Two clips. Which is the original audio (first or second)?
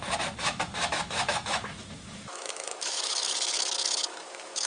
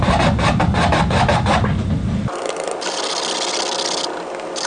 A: second